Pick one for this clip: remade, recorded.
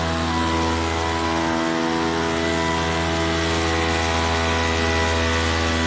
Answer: recorded